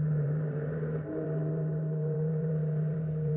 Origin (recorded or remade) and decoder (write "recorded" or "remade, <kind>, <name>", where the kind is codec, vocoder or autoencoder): remade, vocoder, BigVGAN v2